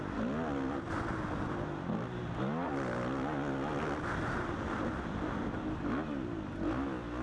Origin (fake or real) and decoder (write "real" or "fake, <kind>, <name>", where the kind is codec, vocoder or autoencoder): real